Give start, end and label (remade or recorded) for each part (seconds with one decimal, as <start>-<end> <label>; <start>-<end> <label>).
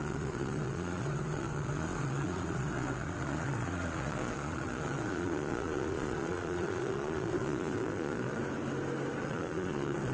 0.0-8.4 remade; 8.4-9.2 recorded; 9.2-10.1 remade